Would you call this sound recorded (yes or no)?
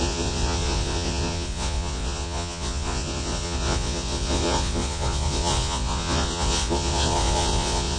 no